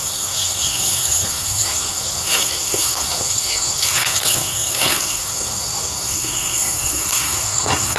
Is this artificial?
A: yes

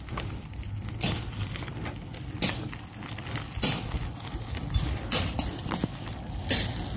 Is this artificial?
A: no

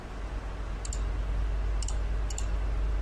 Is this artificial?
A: no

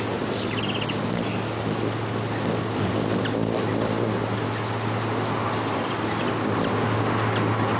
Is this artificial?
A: no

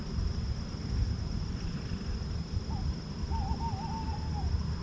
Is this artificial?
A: no